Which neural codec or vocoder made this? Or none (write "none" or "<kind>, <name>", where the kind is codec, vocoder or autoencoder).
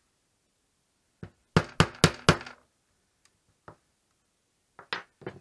none